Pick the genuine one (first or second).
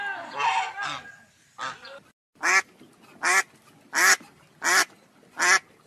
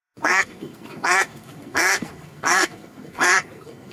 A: first